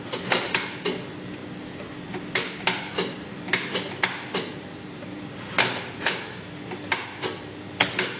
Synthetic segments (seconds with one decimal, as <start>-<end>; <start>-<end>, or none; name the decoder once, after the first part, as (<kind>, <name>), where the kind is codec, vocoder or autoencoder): none